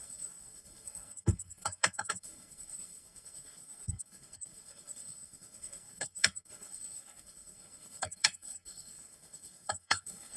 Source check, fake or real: fake